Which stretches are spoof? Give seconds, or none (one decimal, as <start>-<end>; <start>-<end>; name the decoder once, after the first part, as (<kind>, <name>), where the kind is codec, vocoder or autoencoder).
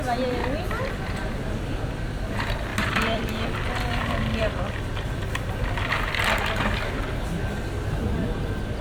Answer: 0.4-0.9 (vocoder, BigVGAN v2); 2.7-4.9